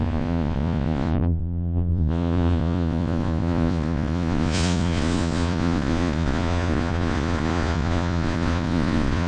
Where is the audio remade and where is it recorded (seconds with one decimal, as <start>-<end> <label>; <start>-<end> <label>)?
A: 0.0-9.3 remade